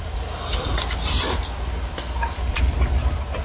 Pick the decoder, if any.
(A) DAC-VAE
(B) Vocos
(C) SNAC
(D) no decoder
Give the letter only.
D